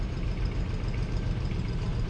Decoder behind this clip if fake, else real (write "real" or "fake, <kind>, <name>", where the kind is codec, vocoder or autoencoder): fake, vocoder, BigVGAN v2